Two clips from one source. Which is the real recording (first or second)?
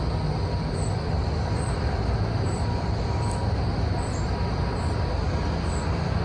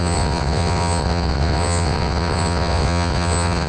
first